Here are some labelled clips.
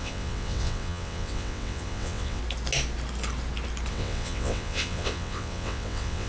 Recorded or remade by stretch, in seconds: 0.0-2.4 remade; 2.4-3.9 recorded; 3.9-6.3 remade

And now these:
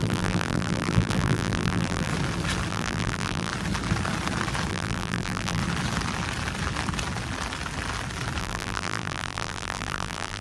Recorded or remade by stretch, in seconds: 0.0-2.1 remade; 2.1-2.7 recorded; 2.7-3.5 remade; 3.5-4.7 recorded; 4.7-5.6 remade; 5.6-8.4 recorded; 8.4-10.4 remade